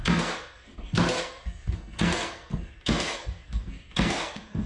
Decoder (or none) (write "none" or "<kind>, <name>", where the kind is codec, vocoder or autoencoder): codec, SNAC